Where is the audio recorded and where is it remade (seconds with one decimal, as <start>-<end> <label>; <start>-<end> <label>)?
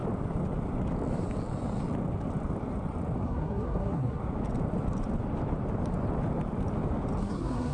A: 0.0-3.2 recorded; 3.2-4.2 remade; 4.2-7.2 recorded; 7.2-7.7 remade